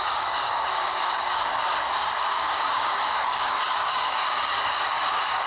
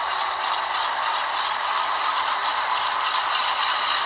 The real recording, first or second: second